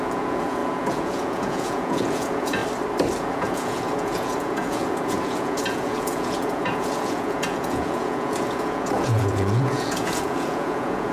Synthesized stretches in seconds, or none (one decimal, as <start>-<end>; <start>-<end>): 0.0-2.6; 3.2-11.1